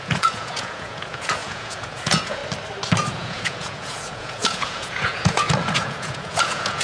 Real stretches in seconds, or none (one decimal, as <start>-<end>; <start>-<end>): 2.4-3.1